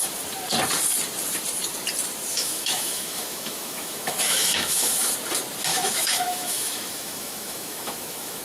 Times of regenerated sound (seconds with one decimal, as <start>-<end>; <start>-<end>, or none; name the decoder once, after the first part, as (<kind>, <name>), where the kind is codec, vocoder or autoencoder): 2.3-5.1 (autoencoder, DAC-VAE); 5.7-8.4